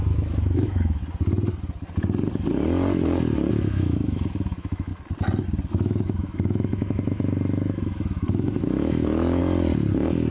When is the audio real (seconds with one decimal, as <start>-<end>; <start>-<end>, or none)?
1.0-3.5; 4.9-5.7; 9.4-10.3